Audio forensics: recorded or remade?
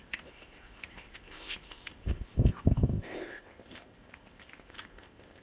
remade